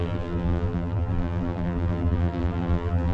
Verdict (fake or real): fake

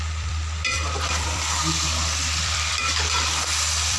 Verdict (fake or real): fake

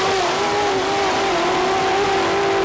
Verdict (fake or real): real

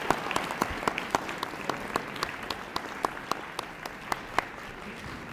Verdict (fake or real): real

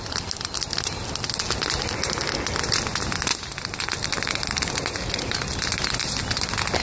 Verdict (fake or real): real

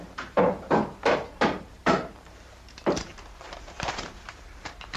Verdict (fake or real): fake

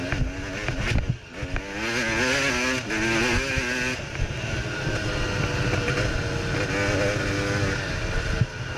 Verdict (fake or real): real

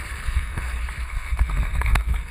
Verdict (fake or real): fake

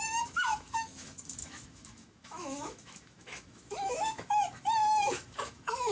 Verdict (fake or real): fake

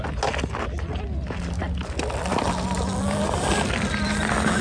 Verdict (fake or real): real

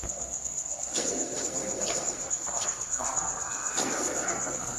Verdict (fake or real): fake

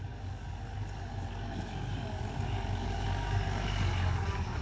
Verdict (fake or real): fake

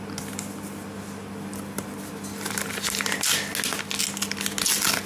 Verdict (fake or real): real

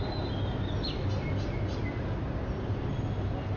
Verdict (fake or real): real